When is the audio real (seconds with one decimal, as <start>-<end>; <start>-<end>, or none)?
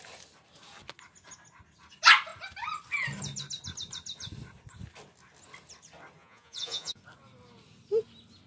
0.0-6.2; 7.0-8.5